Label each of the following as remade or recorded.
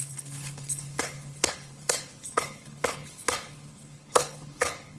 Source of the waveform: remade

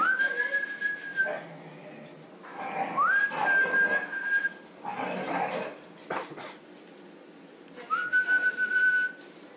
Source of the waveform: recorded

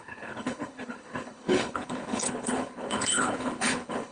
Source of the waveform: remade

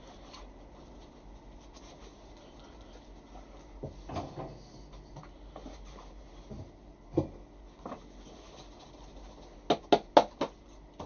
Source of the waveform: recorded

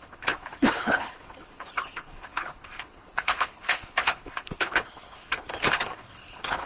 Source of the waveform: remade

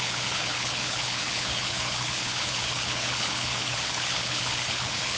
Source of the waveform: remade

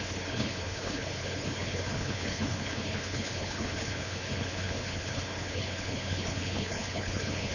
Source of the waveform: remade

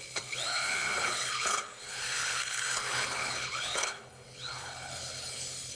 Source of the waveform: remade